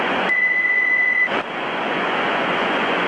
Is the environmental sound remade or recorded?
remade